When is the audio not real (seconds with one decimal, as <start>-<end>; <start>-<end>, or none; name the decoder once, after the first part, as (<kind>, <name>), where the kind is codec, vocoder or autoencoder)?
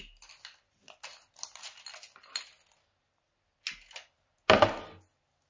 none